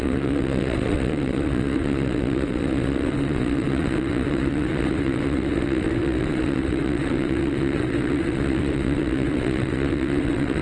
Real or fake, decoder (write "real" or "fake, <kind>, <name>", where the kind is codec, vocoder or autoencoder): fake, vocoder, WaveNeXt